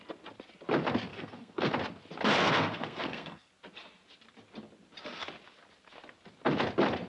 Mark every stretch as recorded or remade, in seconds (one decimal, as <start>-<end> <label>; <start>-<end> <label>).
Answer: 0.0-1.1 recorded; 1.1-1.7 remade; 1.7-2.4 recorded; 2.4-3.5 remade; 3.5-7.1 recorded